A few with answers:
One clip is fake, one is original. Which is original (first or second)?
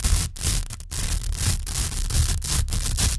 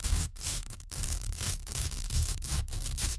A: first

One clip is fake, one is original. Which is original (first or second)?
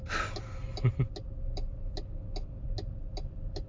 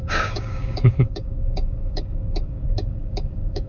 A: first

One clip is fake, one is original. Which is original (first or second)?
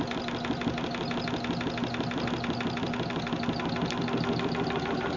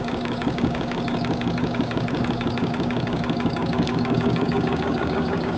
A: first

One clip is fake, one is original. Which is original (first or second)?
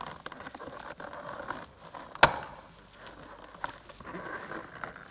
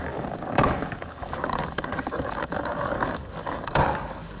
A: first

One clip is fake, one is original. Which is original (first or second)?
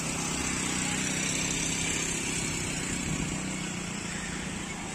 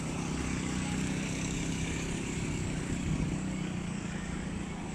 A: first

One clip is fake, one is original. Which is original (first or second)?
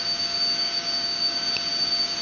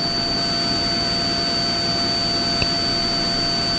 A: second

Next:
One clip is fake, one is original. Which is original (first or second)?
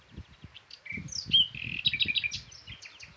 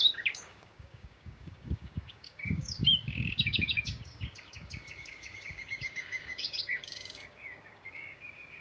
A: first